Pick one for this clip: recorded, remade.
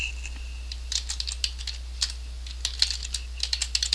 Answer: recorded